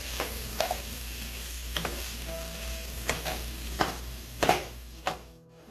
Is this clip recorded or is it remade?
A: remade